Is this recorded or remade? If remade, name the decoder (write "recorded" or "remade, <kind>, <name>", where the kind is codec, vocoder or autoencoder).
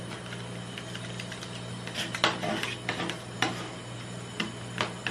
recorded